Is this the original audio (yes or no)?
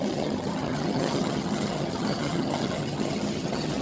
no